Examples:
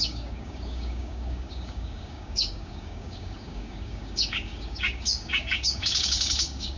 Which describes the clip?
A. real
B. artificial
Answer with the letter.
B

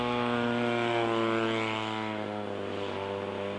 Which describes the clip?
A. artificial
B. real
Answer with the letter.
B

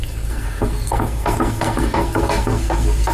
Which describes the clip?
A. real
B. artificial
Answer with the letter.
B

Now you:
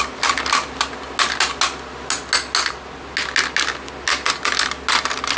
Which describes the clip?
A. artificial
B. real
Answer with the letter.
B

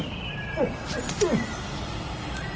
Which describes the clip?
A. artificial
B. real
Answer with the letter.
B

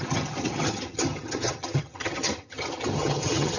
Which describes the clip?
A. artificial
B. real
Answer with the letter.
A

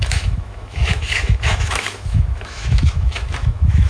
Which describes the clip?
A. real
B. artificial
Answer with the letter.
B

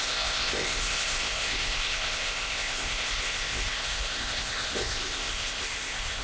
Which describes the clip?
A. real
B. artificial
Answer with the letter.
B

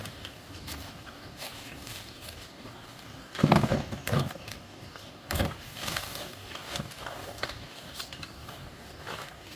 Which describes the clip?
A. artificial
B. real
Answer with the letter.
A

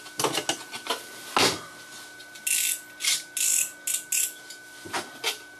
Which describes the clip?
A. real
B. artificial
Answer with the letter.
A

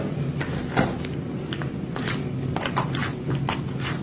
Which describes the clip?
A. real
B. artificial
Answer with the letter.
A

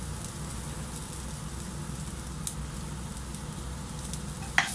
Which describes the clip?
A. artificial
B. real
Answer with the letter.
B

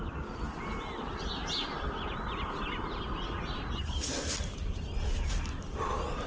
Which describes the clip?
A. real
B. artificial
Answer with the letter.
A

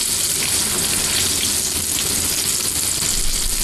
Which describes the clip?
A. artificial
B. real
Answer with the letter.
B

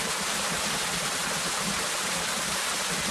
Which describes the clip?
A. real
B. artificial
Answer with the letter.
A